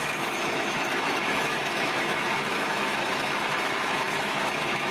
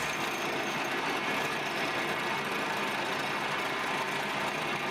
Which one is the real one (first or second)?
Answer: second